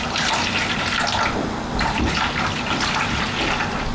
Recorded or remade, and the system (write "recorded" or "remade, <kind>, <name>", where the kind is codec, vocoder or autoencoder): recorded